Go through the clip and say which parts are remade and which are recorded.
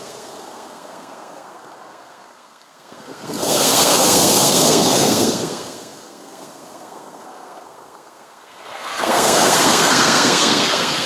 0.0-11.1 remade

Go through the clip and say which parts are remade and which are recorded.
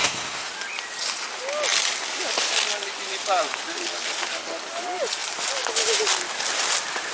0.0-0.5 remade; 0.5-7.1 recorded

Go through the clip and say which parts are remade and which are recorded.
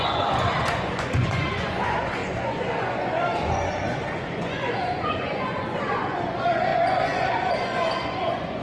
0.0-8.6 remade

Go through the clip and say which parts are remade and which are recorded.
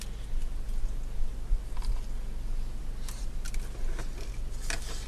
0.0-5.1 recorded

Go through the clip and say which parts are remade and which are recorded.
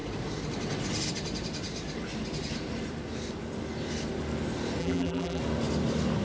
0.0-4.8 recorded; 4.8-5.4 remade; 5.4-6.2 recorded